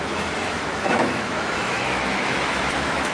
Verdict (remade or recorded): remade